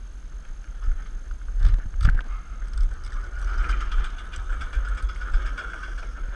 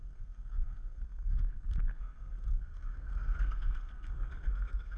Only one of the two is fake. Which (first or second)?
second